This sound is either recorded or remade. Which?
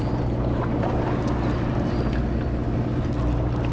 recorded